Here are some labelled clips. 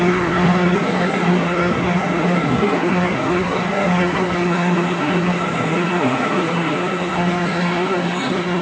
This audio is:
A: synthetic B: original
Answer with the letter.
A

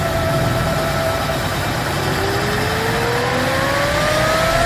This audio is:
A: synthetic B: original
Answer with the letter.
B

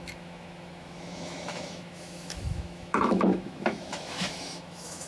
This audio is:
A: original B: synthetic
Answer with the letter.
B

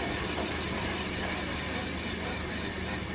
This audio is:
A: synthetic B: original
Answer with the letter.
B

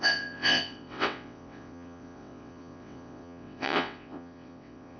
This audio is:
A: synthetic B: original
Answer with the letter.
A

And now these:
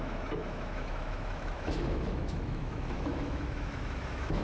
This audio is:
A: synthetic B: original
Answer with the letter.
A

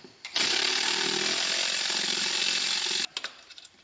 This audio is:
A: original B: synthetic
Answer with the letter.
A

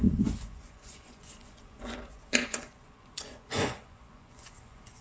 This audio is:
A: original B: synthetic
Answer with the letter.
B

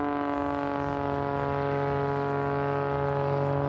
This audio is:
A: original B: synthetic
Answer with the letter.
A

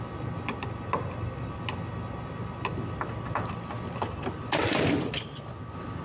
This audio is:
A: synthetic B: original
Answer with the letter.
B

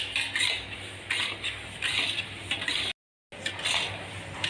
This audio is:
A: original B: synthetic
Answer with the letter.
A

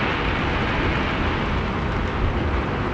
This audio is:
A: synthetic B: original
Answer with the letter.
B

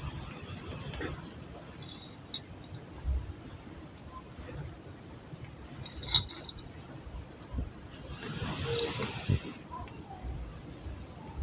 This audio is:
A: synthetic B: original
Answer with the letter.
B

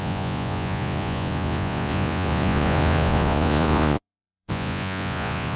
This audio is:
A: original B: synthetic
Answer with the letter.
B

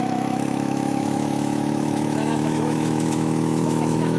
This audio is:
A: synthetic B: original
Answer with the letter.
A